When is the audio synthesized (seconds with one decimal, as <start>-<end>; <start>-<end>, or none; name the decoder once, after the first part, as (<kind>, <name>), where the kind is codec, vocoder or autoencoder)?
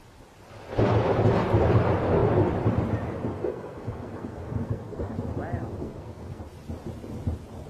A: 3.3-5.1 (codec, SNAC); 5.8-6.4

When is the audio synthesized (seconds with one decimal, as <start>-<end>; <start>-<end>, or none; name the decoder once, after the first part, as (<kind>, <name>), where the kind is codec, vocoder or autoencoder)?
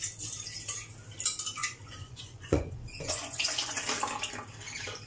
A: 1.6-3.8 (vocoder, Vocos)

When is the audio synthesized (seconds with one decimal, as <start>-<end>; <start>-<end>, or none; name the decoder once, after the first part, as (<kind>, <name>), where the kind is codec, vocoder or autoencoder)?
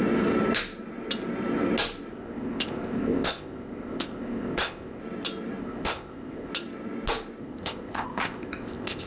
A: 2.1-5.0 (codec, ZipCodec); 5.6-6.5; 7.4-9.1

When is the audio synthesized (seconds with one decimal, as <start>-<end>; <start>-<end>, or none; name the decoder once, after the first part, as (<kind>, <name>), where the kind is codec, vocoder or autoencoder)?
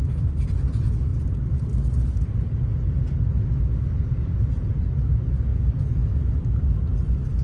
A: none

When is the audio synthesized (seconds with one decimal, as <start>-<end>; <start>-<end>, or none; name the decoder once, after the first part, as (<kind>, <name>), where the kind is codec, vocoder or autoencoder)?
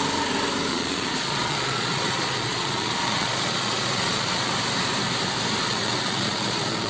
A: 0.7-4.5 (vocoder, Vocos); 5.6-6.9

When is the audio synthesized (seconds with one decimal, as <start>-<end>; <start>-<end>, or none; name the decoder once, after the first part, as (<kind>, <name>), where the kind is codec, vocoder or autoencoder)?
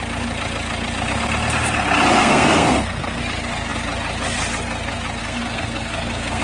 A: 2.2-3.2 (codec, SNAC); 5.2-6.4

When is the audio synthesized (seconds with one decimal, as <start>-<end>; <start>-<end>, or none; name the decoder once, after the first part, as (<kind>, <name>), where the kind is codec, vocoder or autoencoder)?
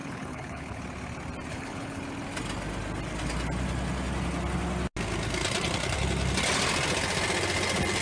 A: 0.0-0.8 (codec, HILCodec); 1.5-2.0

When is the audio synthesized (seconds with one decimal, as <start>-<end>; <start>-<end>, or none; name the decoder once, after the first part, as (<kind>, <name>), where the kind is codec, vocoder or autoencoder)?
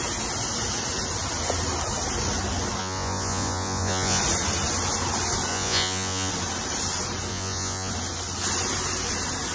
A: 2.8-4.2 (vocoder, Vocos); 5.5-6.3; 7.3-7.9